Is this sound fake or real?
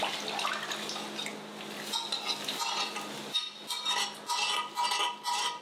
real